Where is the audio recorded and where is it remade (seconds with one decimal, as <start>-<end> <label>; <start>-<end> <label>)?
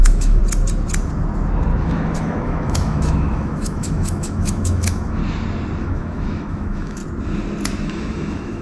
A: 0.0-0.4 remade; 0.4-1.8 recorded; 1.8-5.2 remade; 5.2-5.8 recorded; 5.8-7.0 remade; 7.0-7.8 recorded; 7.8-8.6 remade